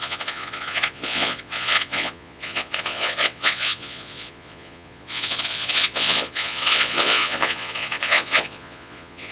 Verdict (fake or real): fake